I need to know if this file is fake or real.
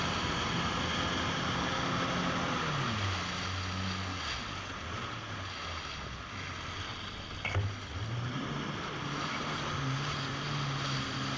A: real